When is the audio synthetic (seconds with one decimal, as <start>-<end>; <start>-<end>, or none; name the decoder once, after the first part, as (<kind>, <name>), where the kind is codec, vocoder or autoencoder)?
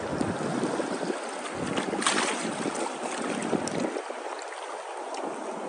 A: none